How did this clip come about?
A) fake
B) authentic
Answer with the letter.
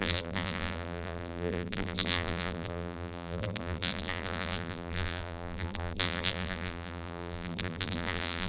A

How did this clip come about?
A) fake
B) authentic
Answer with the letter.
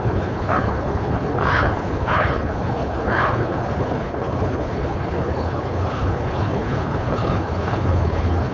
A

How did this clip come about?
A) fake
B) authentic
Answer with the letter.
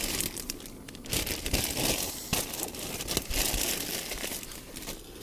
B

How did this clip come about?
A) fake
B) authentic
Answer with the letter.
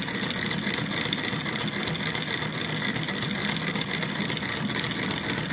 B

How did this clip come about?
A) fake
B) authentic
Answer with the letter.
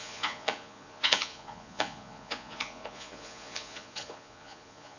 A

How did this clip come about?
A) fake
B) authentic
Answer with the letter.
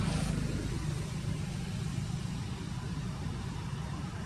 B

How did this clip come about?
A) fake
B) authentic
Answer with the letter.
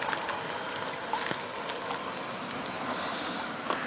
B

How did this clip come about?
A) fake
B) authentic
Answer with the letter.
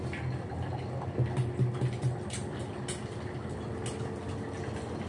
B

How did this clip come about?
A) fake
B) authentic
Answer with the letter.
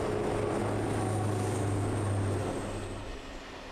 B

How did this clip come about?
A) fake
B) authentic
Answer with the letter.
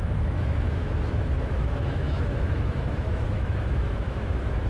A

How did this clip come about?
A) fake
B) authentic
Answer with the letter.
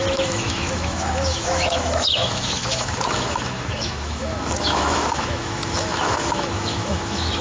A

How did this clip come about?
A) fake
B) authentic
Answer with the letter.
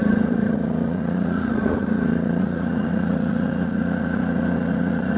A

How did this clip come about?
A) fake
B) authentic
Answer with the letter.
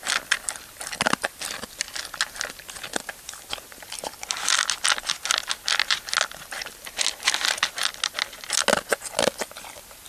B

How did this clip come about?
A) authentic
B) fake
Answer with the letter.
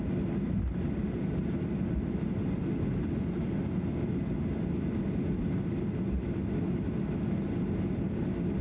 A